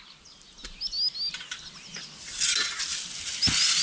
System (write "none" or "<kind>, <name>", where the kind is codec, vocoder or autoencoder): none